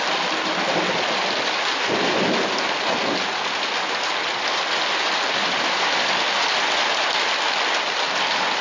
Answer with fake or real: real